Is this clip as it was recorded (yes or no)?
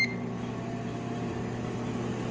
yes